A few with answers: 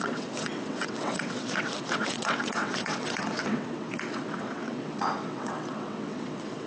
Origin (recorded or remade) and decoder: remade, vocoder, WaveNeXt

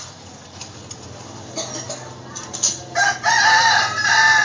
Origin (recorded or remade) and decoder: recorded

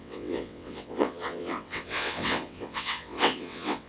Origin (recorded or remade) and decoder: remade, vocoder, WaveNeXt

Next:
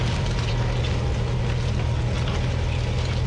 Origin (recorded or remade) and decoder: recorded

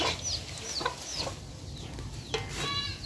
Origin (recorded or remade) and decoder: recorded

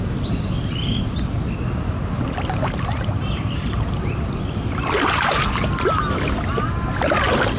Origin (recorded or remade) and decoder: recorded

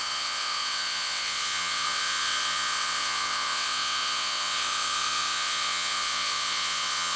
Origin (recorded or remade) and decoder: remade, vocoder, WaveNeXt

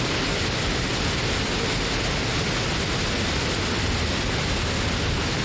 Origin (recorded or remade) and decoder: recorded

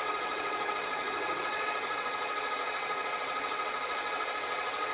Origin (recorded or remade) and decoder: remade, vocoder, WaveNeXt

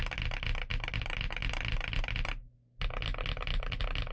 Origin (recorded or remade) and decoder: recorded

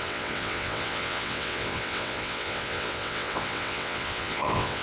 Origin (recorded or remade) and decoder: remade, vocoder, WaveNeXt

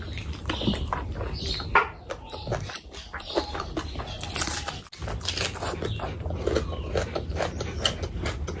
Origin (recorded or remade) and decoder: recorded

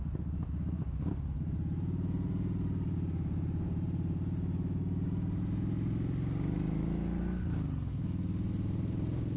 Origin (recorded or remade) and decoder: recorded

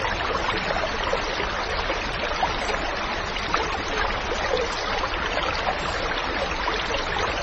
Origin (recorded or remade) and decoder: recorded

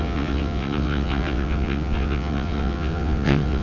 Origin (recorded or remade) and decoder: remade, vocoder, WaveNeXt